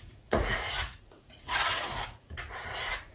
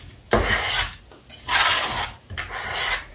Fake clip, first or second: first